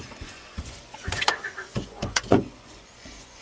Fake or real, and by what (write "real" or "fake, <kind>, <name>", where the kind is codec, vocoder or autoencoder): fake, vocoder, Vocos